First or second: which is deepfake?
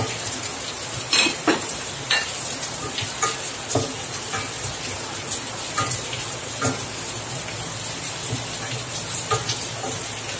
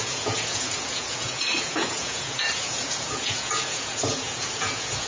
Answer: second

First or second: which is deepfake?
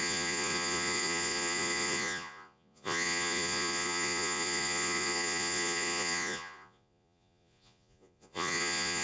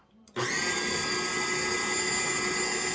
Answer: first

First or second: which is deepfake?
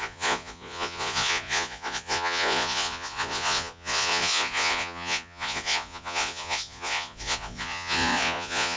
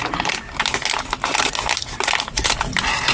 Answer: first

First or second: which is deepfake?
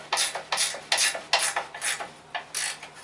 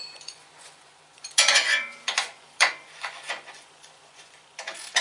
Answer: second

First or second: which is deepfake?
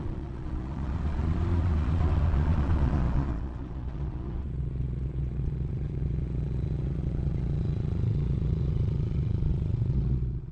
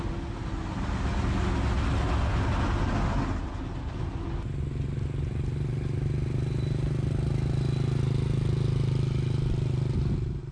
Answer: first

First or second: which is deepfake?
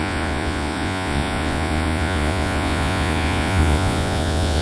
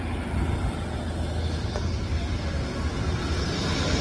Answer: first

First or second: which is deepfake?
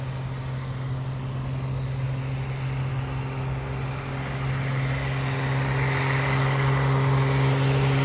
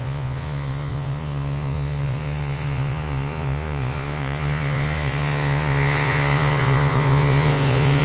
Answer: second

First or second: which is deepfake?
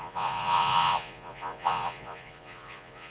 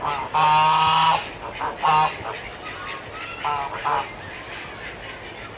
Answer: first